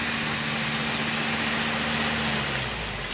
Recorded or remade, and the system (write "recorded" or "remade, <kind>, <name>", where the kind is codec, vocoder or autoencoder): recorded